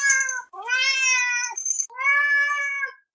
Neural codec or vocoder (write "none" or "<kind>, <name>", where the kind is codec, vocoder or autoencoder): none